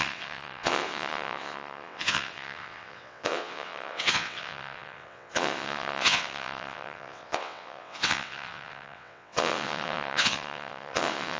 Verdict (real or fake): fake